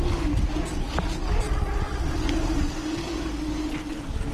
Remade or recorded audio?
recorded